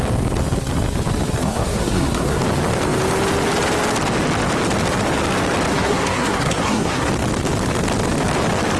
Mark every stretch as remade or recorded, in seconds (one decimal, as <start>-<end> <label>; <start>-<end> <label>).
0.0-1.4 recorded; 1.4-2.4 remade; 2.4-5.7 recorded; 5.7-7.1 remade; 7.1-8.8 recorded